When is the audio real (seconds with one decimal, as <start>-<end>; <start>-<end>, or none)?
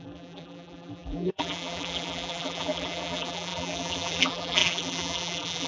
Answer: none